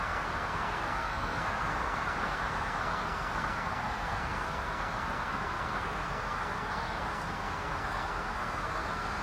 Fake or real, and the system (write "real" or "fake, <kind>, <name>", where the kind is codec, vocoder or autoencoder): fake, codec, SNAC